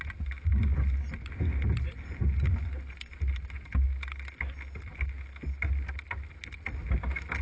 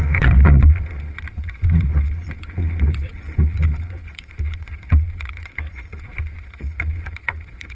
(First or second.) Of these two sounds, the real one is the first